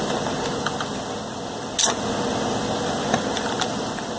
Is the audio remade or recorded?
recorded